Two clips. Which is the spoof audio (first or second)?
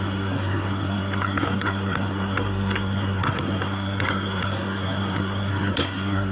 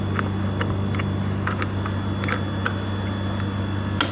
first